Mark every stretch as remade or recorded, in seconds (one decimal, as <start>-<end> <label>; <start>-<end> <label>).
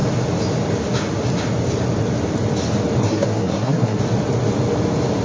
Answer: 0.0-3.0 recorded; 3.0-4.0 remade; 4.0-5.2 recorded